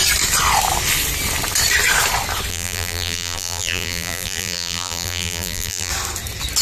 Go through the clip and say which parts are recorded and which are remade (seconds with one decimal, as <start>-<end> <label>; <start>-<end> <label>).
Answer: 0.0-2.5 recorded; 2.5-5.9 remade; 5.9-6.6 recorded